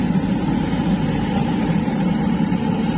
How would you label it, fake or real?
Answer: fake